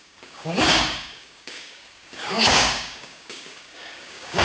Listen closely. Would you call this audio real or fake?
fake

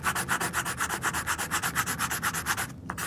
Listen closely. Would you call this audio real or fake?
real